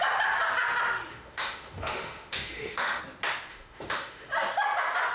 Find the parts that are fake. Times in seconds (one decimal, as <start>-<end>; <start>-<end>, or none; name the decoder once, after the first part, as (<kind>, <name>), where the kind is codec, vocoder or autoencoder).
1.1-3.0 (autoencoder, DAC-VAE); 3.5-4.3